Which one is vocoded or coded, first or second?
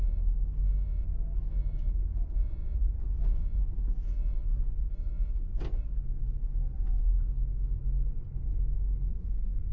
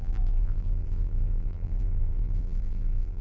second